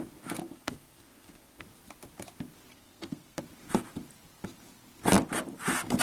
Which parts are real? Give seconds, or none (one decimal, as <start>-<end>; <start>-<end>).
0.0-0.4; 1.6-2.7; 3.4-6.0